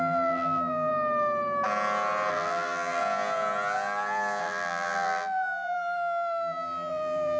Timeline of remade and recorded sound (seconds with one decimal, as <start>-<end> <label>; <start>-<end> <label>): 0.0-0.9 remade; 0.9-2.3 recorded; 2.3-3.0 remade; 3.0-4.4 recorded; 4.4-7.4 remade

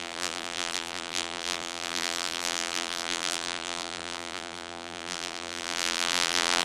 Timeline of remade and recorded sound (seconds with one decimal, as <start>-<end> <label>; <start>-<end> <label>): 0.0-6.6 remade

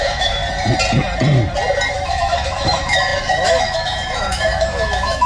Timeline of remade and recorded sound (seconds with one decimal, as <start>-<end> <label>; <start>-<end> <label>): 0.0-0.4 remade; 0.4-1.9 recorded; 1.9-5.3 remade

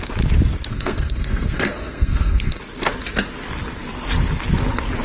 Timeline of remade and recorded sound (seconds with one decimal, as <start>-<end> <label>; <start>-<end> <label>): 0.0-0.7 recorded; 0.7-2.6 remade; 2.6-5.0 recorded

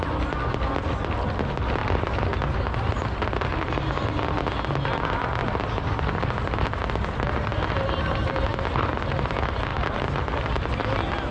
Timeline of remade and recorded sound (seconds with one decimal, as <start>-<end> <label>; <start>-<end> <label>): 0.0-9.7 recorded; 9.7-10.4 remade; 10.4-11.3 recorded

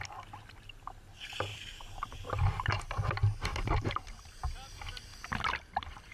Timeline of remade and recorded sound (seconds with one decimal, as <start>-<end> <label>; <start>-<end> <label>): 0.0-1.5 recorded; 1.5-2.1 remade; 2.1-3.5 recorded; 3.5-4.4 remade; 4.4-6.1 recorded